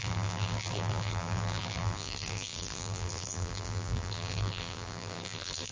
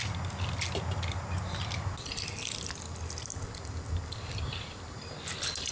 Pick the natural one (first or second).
second